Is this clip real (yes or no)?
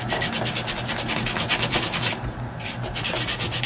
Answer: yes